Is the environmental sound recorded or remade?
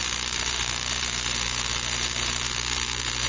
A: remade